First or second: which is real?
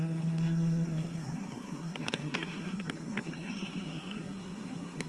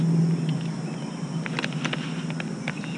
second